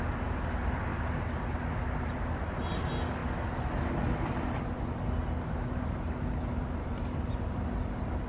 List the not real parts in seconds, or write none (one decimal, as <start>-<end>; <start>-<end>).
none